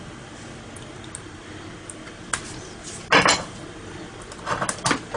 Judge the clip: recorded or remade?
recorded